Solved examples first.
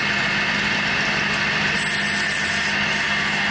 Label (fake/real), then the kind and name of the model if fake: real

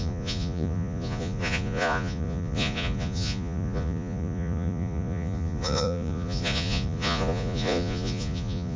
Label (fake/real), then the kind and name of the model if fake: fake, vocoder, Vocos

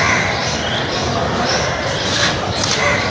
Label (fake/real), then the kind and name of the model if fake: real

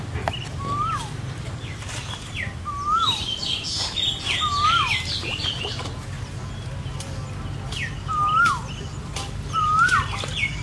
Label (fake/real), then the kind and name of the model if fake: real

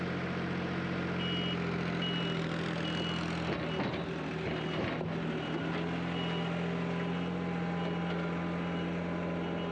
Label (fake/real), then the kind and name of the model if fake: real